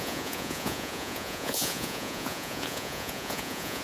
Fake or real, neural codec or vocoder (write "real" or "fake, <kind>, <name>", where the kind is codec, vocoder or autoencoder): fake, vocoder, Vocos